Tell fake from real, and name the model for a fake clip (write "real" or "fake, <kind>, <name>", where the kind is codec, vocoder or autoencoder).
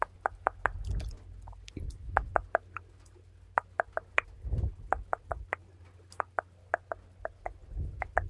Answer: real